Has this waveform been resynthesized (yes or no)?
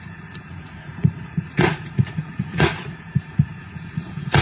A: yes